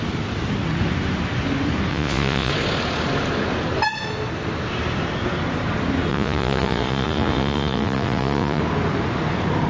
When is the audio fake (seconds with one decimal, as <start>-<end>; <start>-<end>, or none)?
1.9-2.5; 6.1-8.6